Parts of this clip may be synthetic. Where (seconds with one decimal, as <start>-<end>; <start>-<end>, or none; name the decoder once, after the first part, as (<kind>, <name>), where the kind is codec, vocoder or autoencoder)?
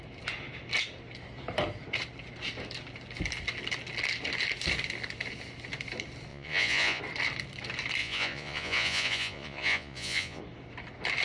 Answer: 6.3-7.0 (vocoder, Vocos); 8.0-10.4